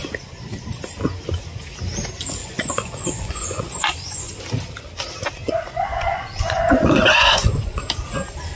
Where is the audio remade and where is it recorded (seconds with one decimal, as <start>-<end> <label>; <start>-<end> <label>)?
0.0-2.4 recorded; 2.4-4.4 remade; 4.4-5.4 recorded; 5.4-7.8 remade; 7.8-8.6 recorded